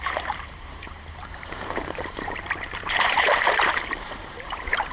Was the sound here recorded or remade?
remade